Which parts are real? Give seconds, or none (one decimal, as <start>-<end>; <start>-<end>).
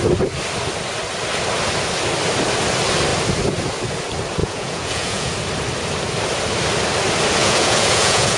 0.0-4.4; 5.3-7.4